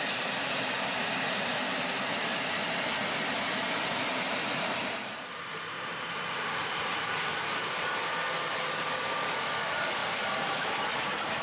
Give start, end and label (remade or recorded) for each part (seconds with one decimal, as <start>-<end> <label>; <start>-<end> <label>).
0.0-2.3 recorded; 2.3-7.2 remade; 7.2-10.0 recorded; 10.0-10.5 remade; 10.5-11.4 recorded